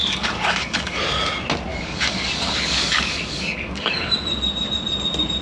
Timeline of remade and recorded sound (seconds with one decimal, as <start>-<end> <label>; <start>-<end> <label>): 0.0-1.0 remade; 1.0-1.7 recorded; 1.7-4.1 remade; 4.1-5.4 recorded